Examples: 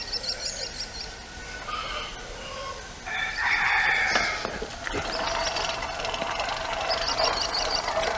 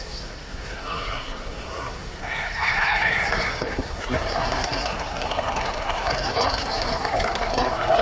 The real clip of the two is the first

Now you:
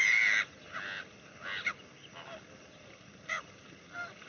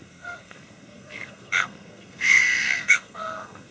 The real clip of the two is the first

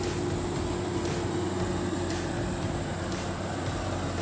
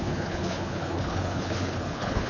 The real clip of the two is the first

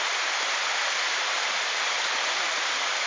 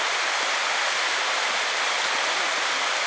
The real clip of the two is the second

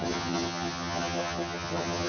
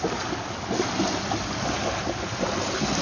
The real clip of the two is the second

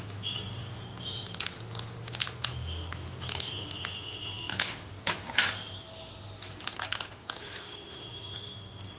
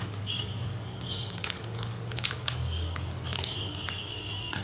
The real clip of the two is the first